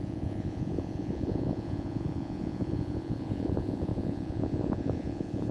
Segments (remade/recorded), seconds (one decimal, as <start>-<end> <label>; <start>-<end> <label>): 0.0-5.5 remade